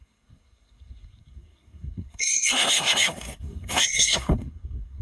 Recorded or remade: remade